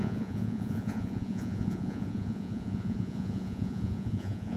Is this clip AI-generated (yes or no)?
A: yes